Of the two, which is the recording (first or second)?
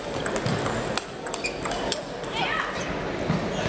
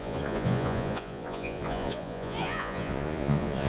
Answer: first